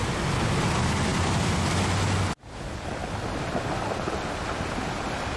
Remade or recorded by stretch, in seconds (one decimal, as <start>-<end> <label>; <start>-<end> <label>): 0.0-5.4 recorded